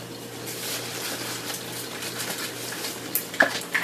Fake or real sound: real